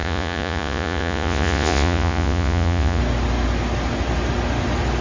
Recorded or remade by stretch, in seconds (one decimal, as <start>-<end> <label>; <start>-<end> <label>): 0.0-3.0 remade; 3.0-5.0 recorded